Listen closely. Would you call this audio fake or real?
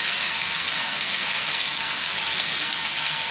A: fake